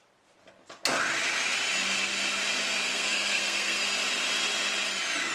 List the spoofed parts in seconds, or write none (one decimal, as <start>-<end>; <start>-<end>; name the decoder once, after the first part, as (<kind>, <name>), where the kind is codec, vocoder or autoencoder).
2.9-3.8 (codec, SNAC)